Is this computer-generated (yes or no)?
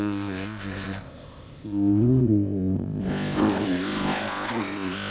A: yes